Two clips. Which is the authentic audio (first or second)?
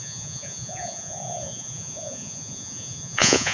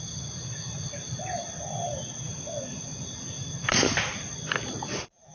second